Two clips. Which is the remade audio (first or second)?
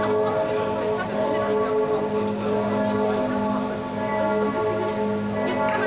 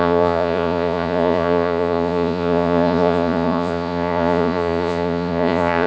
second